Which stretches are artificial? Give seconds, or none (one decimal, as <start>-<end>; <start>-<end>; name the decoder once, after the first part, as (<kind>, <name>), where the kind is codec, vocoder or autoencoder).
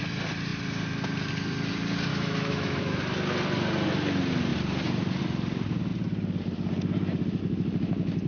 2.1-3.0 (autoencoder, DAC-VAE)